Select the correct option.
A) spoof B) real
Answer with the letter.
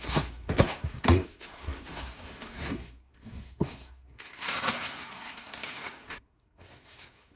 A